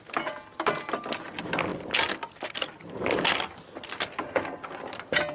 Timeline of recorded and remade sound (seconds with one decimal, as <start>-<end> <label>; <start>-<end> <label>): 0.0-5.3 recorded